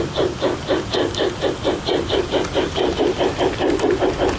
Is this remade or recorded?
recorded